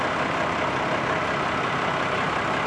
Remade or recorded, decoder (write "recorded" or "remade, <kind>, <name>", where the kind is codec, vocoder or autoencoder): recorded